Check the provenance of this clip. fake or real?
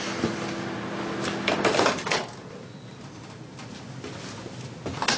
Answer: real